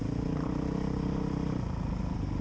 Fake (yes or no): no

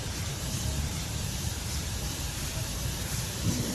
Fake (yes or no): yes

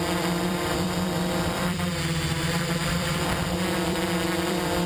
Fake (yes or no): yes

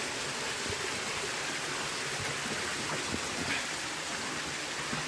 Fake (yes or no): no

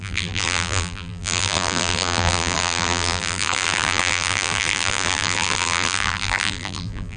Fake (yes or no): yes